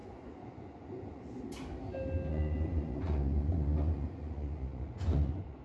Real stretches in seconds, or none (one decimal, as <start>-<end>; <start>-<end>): 1.4-2.3